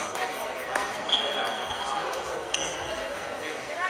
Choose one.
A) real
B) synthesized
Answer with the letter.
B